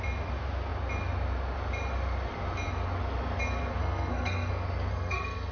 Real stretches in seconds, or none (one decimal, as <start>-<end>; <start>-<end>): 0.0-3.8; 4.5-4.9